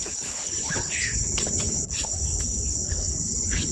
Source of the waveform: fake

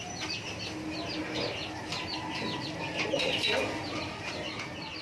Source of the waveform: real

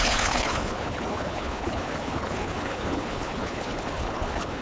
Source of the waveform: fake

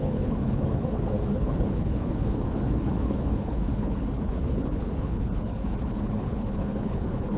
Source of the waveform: fake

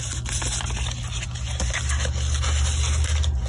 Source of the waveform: real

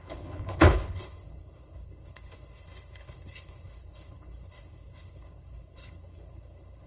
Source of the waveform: fake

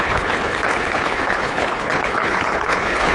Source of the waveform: fake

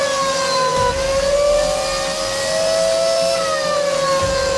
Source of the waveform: real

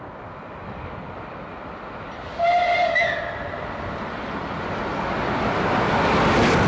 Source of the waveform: real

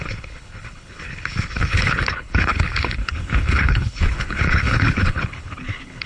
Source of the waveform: fake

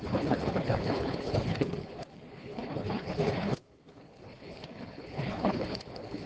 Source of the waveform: fake